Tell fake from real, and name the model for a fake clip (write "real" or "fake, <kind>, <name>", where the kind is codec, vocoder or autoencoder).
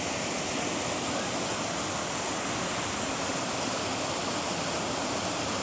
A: real